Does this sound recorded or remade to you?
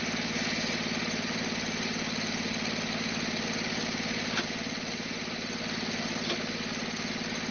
recorded